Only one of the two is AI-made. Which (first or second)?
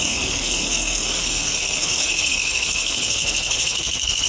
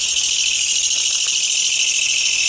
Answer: first